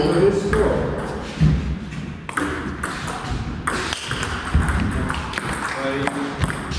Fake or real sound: real